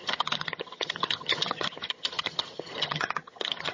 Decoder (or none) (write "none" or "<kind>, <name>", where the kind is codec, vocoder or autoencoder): vocoder, HiFi-GAN